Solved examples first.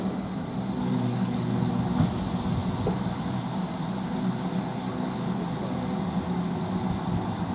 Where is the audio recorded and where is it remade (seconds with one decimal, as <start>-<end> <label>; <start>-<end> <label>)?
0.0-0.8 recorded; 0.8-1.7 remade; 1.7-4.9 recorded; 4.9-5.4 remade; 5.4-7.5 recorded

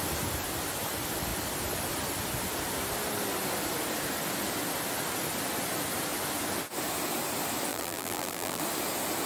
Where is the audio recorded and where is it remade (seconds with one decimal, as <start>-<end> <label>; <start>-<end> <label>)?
0.0-7.7 recorded; 7.7-8.6 remade; 8.6-9.3 recorded

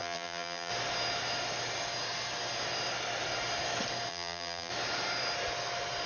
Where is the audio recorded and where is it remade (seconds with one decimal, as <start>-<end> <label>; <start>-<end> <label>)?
0.0-0.7 remade; 0.7-4.1 recorded; 4.1-4.7 remade; 4.7-6.1 recorded

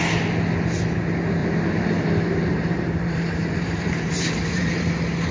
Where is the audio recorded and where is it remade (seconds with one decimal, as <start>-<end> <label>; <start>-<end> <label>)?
0.0-1.4 recorded; 1.4-4.6 remade; 4.6-5.3 recorded